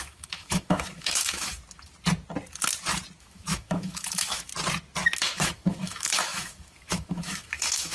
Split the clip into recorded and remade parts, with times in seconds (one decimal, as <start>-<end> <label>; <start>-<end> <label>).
0.0-1.6 remade; 1.6-3.2 recorded; 3.2-4.5 remade; 4.5-5.2 recorded; 5.2-7.9 remade